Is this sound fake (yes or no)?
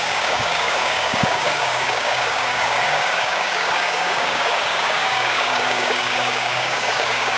yes